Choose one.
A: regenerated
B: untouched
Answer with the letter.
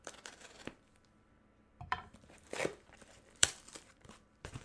A